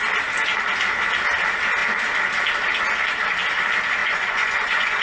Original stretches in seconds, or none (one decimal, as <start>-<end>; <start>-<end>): 0.0-4.0